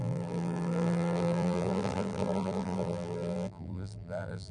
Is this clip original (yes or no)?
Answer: no